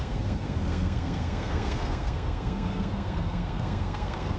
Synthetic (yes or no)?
yes